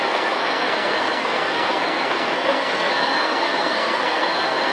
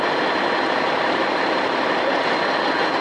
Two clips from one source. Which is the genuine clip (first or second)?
second